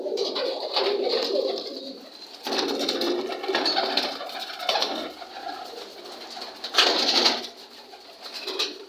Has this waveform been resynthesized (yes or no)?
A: no